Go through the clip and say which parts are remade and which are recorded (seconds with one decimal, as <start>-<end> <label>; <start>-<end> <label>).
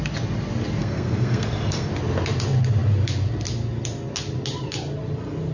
0.0-0.8 recorded; 0.8-1.9 remade; 1.9-5.5 recorded